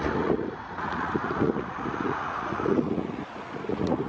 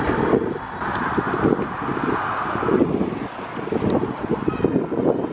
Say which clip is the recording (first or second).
second